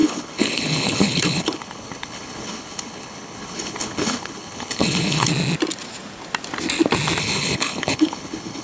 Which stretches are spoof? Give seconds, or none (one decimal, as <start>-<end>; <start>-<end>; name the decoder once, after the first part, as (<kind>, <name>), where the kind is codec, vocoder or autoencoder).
0.0-5.3 (codec, HILCodec); 7.2-8.6